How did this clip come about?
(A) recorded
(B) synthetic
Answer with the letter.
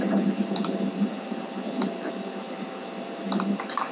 B